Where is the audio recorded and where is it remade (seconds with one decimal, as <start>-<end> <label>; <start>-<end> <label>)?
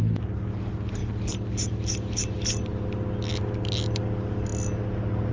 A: 0.0-5.3 recorded